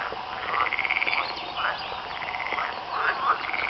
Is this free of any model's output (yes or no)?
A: yes